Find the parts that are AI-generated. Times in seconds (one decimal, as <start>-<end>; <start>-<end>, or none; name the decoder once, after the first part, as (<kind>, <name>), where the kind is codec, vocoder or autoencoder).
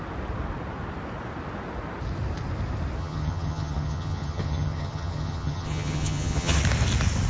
3.0-6.6 (vocoder, HiFi-GAN)